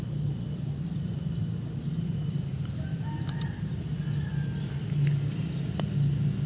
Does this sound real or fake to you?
real